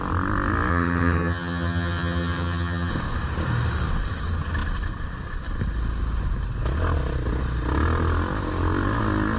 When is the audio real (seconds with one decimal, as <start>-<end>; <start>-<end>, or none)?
0.0-0.7; 2.9-9.4